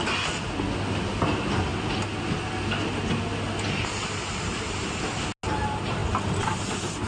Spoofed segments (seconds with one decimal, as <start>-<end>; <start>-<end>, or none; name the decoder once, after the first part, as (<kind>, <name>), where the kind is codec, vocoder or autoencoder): none